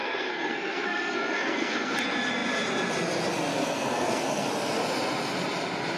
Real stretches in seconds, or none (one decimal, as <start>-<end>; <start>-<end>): 2.0-3.5; 4.5-6.0